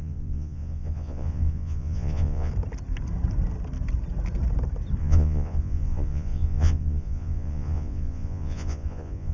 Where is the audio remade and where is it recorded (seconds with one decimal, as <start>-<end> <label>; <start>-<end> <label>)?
0.0-2.5 remade; 2.5-5.0 recorded; 5.0-9.3 remade